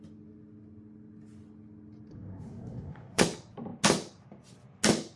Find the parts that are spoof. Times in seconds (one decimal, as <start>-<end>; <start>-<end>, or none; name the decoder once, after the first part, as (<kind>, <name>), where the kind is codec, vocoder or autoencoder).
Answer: 2.1-3.2 (codec, SNAC)